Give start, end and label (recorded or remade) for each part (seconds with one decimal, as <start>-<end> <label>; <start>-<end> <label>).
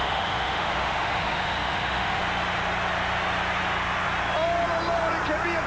0.0-2.2 remade; 2.2-5.7 recorded